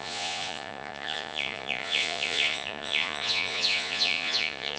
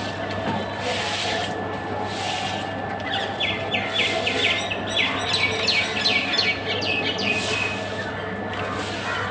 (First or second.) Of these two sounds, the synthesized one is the first